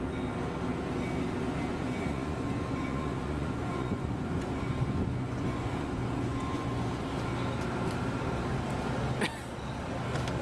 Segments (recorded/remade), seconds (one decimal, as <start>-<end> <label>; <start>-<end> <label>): 0.0-1.7 recorded; 1.7-6.9 remade; 6.9-10.4 recorded